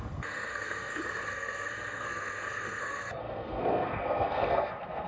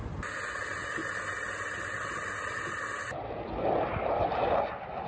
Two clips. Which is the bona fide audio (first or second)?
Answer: second